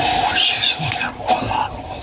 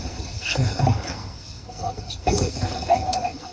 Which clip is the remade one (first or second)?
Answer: second